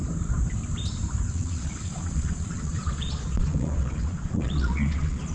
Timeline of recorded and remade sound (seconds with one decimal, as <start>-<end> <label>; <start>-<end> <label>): 0.0-1.3 recorded; 1.3-5.3 remade